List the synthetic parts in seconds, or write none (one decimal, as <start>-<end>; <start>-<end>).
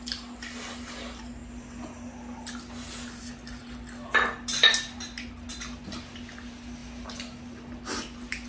none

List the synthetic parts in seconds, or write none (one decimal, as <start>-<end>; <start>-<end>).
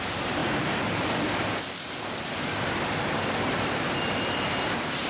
0.0-0.4; 3.5-5.1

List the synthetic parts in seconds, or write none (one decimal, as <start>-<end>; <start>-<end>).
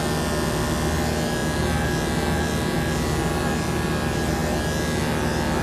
none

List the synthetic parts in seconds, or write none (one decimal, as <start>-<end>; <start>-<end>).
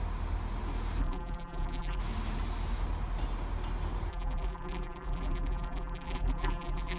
1.0-2.0; 4.1-7.0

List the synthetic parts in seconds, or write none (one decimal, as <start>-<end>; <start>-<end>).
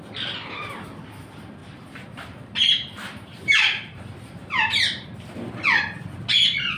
1.6-5.5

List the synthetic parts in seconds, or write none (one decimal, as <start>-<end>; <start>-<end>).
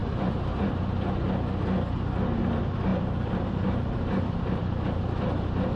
0.0-0.7; 2.9-4.9